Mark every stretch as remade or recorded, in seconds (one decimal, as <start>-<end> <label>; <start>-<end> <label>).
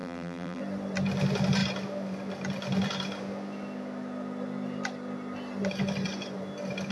0.0-0.6 remade; 0.6-6.9 recorded